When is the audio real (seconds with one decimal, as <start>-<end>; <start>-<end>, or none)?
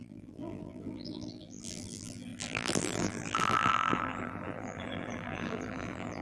none